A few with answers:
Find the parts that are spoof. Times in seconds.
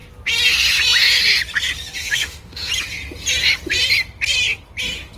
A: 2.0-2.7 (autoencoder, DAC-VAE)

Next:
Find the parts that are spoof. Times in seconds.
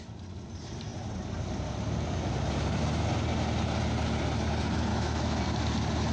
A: 4.9-5.4 (autoencoder, DAC-VAE)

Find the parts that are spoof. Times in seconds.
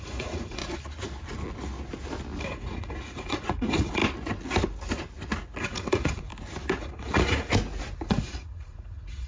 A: 0.0-0.6 (vocoder, Vocos); 2.4-4.0; 5.6-6.3; 6.8-7.5; 8.1-9.3